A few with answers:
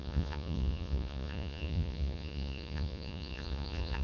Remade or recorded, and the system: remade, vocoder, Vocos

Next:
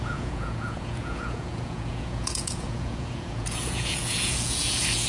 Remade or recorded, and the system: remade, vocoder, Vocos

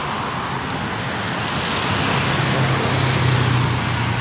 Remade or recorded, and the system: recorded